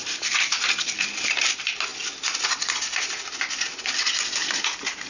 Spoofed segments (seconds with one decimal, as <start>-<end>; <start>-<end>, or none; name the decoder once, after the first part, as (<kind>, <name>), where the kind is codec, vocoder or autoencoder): none